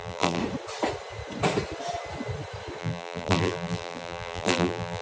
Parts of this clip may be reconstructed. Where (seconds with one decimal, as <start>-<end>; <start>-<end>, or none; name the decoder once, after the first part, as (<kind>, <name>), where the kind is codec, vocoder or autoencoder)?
0.0-0.4 (vocoder, BigVGAN v2); 2.8-5.0